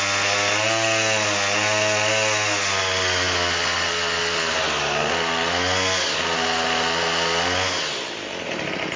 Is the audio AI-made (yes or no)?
no